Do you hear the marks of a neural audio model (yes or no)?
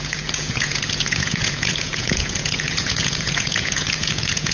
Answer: yes